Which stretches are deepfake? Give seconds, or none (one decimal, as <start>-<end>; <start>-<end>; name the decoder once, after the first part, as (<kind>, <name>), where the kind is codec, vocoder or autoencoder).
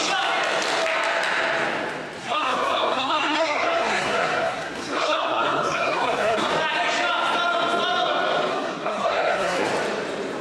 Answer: 2.2-6.5 (codec, SNAC); 8.5-9.7